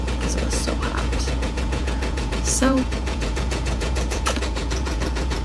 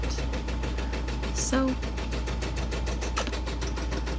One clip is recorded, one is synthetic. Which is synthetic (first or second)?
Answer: first